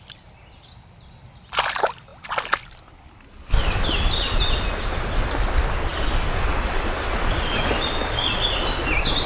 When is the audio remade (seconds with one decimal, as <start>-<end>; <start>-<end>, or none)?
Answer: none